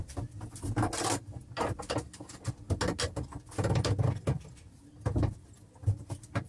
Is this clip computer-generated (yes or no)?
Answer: no